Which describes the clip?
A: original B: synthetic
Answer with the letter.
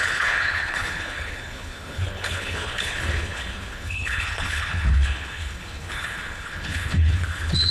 B